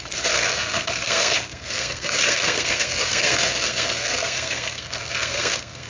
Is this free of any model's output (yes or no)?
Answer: no